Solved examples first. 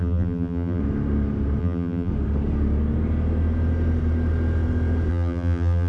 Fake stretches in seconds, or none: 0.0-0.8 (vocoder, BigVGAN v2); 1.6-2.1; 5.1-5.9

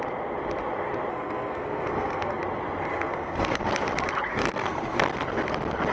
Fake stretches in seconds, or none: 1.1-2.4 (codec, SNAC); 2.9-3.7; 4.3-5.0

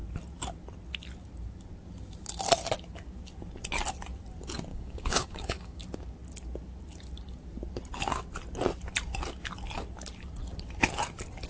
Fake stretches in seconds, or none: 4.7-5.8 (codec, DAC)

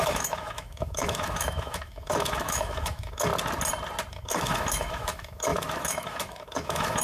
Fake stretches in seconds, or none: 0.0-3.3 (autoencoder, DAC-VAE); 4.1-7.0

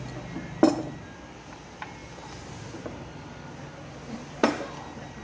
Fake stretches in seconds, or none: none

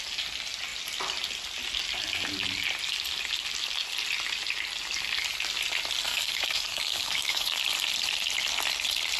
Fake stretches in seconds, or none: 6.1-7.6 (codec, DAC)